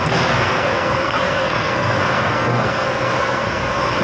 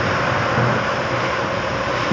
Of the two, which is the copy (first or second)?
first